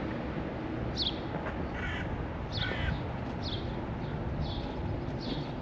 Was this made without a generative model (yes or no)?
yes